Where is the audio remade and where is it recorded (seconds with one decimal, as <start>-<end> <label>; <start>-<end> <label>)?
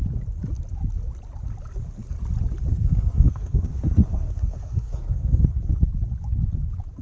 0.0-2.7 recorded; 2.7-5.8 remade; 5.8-7.0 recorded